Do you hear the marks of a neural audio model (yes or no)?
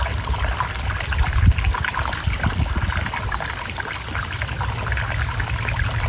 no